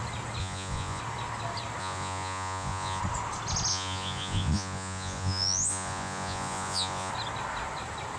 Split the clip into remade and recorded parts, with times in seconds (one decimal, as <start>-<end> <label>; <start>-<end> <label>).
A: 0.0-0.4 recorded; 0.4-1.0 remade; 1.0-1.8 recorded; 1.8-3.0 remade; 3.0-3.7 recorded; 3.7-7.1 remade; 7.1-8.2 recorded